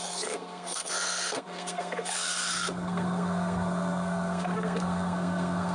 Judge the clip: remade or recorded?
remade